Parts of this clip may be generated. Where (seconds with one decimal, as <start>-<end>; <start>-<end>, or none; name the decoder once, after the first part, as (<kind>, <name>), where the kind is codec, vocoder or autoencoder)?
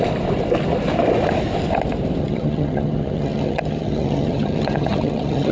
2.2-5.5 (vocoder, HiFi-GAN)